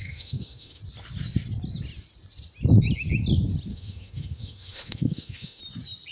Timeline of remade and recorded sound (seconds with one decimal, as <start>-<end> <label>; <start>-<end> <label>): 0.0-0.8 remade; 0.8-3.7 recorded; 3.7-5.6 remade; 5.6-6.1 recorded

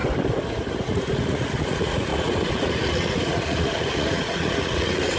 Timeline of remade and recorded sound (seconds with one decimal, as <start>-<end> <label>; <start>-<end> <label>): 0.0-0.7 recorded; 0.7-5.2 remade

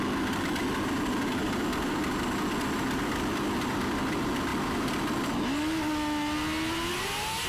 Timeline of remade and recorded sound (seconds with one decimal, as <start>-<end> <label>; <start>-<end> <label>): 0.0-7.5 recorded